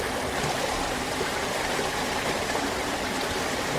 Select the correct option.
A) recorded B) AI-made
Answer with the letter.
A